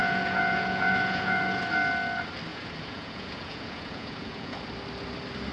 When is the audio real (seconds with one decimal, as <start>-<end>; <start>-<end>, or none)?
1.6-2.5; 4.6-5.5